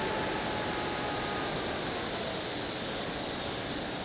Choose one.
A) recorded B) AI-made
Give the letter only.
A